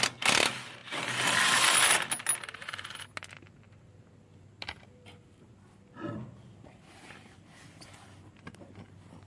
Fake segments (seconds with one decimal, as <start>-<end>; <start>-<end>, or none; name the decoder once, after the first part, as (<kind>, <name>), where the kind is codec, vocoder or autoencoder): none